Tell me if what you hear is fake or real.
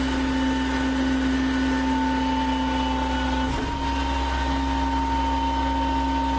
real